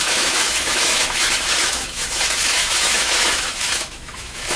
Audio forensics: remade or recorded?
remade